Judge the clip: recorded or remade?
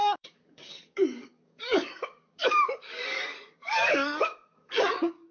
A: remade